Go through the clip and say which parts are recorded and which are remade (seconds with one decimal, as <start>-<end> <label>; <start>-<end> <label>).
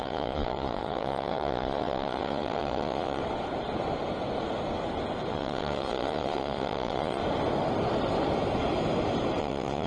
0.0-3.2 remade; 3.2-5.3 recorded; 5.3-7.2 remade; 7.2-9.4 recorded; 9.4-9.9 remade